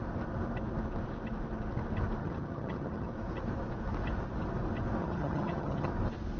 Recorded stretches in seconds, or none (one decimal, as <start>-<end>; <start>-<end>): 0.0-2.2; 3.1-5.0; 5.9-6.4